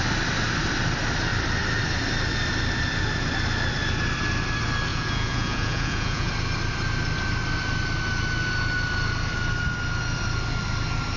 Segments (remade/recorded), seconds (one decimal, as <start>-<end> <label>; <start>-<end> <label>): 0.0-4.9 recorded; 4.9-6.3 remade; 6.3-11.2 recorded